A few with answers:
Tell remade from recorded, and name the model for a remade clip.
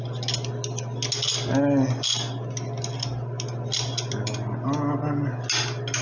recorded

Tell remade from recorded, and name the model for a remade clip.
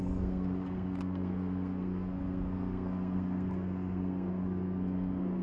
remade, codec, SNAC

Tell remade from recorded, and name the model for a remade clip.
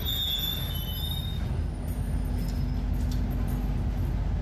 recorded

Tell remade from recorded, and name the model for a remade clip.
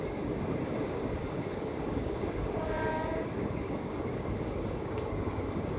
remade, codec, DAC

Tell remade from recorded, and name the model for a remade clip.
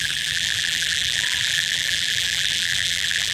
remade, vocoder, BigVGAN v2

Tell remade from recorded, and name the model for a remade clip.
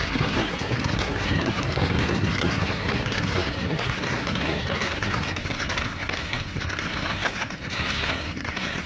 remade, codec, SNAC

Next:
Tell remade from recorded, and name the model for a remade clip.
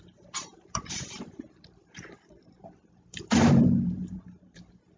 remade, vocoder, BigVGAN v2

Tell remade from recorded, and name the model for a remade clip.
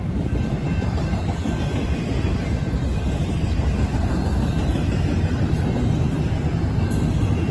recorded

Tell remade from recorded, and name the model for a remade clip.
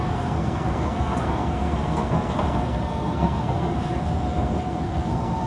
remade, codec, SNAC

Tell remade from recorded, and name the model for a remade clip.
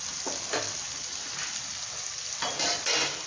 recorded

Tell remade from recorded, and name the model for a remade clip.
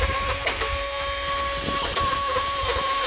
recorded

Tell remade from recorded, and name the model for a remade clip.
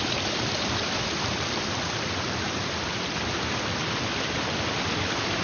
remade, vocoder, BigVGAN v2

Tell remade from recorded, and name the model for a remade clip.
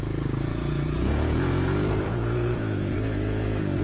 remade, vocoder, Vocos